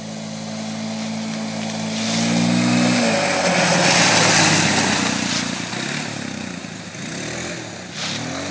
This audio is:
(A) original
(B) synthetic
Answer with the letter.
A